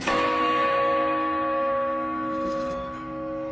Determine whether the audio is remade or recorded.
remade